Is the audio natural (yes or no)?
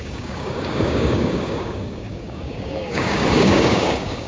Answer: no